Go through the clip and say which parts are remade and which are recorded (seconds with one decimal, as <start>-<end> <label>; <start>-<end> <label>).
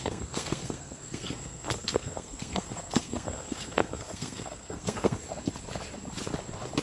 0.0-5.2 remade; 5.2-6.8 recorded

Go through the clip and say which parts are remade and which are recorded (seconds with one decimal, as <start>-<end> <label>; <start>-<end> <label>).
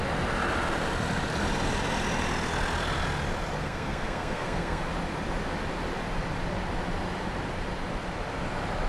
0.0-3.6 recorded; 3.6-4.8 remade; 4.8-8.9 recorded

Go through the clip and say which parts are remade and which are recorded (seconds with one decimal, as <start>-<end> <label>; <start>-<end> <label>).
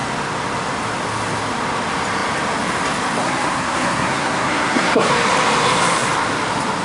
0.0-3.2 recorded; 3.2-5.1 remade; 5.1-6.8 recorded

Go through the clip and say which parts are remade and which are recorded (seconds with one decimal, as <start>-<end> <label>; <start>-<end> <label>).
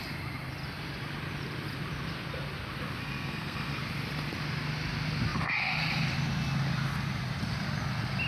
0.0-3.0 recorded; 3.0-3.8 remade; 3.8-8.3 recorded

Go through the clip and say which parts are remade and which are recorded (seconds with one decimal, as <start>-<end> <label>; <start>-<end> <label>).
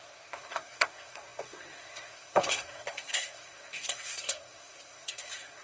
0.0-5.6 remade